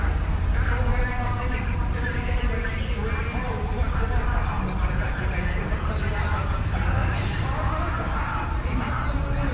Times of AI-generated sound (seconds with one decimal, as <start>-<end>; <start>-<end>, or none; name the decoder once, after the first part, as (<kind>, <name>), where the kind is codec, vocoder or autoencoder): 0.9-2.5 (vocoder, BigVGAN v2); 7.0-8.0